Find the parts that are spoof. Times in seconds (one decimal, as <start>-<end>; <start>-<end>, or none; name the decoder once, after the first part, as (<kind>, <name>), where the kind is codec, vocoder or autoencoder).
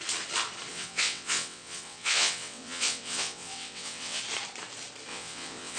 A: 0.7-4.2 (vocoder, WaveNeXt); 5.1-5.8